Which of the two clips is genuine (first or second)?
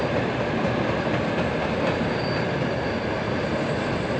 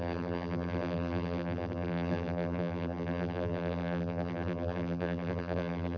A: first